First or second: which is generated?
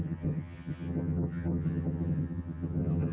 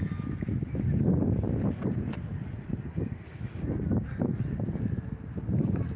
first